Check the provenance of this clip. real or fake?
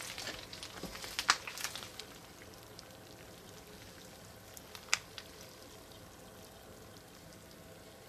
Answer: real